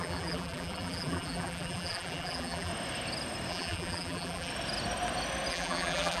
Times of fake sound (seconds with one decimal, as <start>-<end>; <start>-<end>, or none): 0.0-2.7; 3.5-4.5; 5.5-6.2